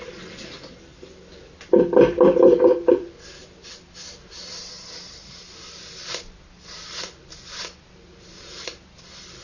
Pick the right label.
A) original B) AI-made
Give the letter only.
A